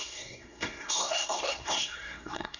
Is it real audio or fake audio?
fake